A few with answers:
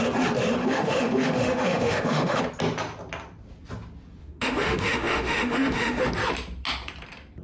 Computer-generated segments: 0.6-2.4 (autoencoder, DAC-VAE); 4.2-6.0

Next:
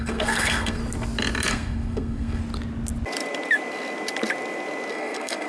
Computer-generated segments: 0.0-0.8 (codec, SNAC); 1.5-2.4; 4.9-5.5

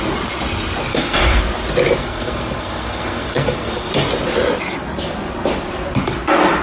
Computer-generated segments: 0.9-1.4 (codec, SNAC); 2.0-3.9

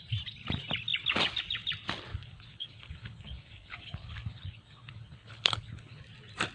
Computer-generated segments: 2.1-6.0 (codec, HILCodec)

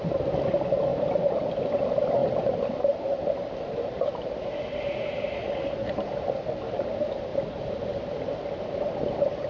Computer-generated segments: 0.9-1.4 (vocoder, BigVGAN v2); 2.2-3.0; 7.3-8.4

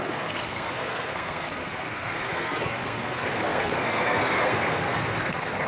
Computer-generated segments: 0.0-5.7 (codec, SNAC)

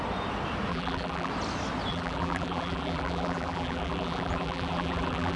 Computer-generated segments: 0.7-1.3 (vocoder, BigVGAN v2); 1.9-5.4